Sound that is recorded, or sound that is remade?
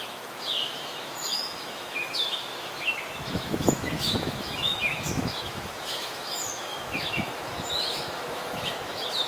remade